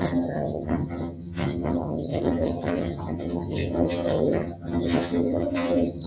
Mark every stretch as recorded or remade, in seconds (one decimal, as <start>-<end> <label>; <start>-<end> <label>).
0.0-6.1 remade